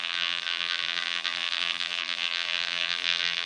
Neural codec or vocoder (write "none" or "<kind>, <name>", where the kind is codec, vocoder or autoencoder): vocoder, BigVGAN v2